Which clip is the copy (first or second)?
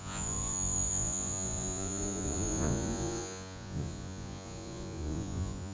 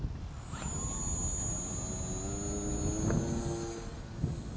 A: first